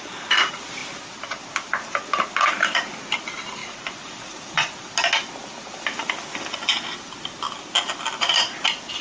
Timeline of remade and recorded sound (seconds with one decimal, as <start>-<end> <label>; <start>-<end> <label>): 0.0-0.8 recorded; 0.8-1.4 remade; 1.4-9.0 recorded